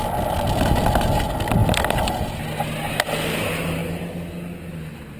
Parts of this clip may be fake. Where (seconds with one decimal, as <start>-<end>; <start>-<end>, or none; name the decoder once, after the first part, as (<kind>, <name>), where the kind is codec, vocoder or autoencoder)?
none